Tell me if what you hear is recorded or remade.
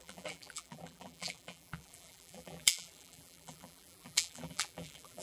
remade